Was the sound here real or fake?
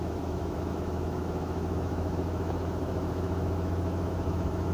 fake